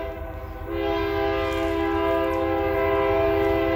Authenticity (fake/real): real